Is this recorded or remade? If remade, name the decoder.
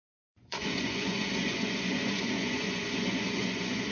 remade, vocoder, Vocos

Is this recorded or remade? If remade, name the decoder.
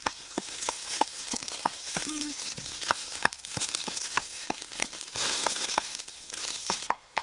remade, codec, SNAC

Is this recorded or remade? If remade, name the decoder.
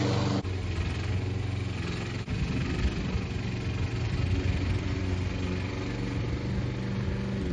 recorded